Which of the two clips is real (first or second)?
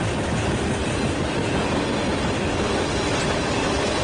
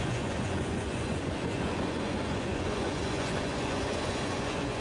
first